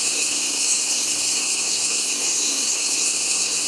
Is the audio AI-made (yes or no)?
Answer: yes